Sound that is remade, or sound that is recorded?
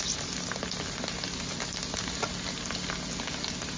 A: recorded